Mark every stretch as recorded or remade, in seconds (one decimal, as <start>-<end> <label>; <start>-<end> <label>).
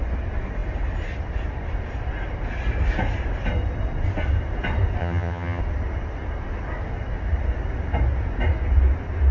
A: 0.0-5.0 recorded; 5.0-5.6 remade; 5.6-9.3 recorded